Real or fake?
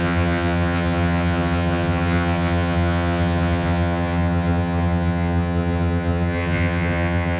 fake